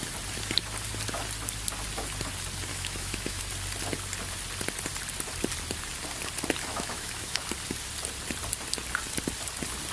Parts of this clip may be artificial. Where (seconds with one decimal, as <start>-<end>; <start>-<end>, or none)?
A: 2.7-3.4; 6.7-7.4